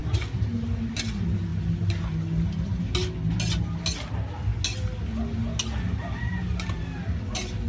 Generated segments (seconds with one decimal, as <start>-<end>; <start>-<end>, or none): none